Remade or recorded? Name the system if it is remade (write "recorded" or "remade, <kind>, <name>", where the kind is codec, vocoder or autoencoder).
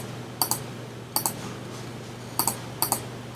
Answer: recorded